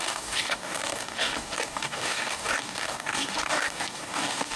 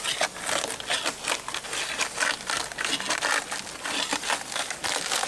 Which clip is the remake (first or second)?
first